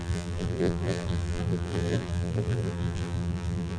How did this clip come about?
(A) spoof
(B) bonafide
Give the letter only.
A